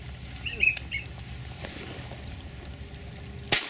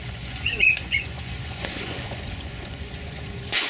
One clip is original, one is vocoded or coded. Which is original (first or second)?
first